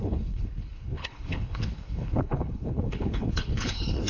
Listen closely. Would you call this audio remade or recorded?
remade